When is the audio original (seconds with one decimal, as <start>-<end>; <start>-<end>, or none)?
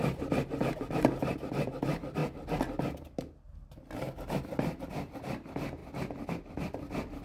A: 2.2-4.8; 5.8-6.3